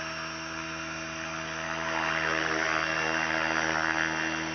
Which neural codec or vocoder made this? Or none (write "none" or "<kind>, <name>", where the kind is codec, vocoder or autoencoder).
none